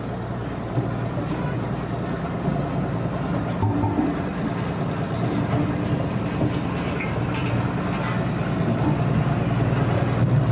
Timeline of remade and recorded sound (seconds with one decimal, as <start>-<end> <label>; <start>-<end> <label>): 0.0-10.5 recorded